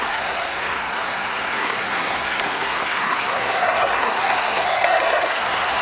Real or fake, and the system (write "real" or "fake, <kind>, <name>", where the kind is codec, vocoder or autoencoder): fake, codec, SNAC